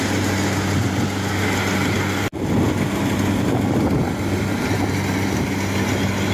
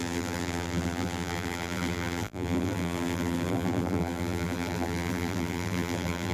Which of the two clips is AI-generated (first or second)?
second